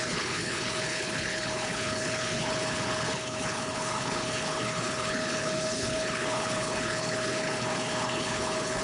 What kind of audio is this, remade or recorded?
remade